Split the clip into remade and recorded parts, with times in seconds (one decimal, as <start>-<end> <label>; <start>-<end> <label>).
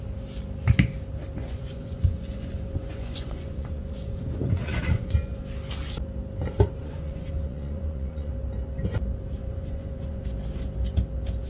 0.0-1.4 recorded; 1.4-5.4 remade; 5.4-6.8 recorded; 6.8-8.3 remade; 8.3-9.4 recorded; 9.4-10.2 remade; 10.2-11.5 recorded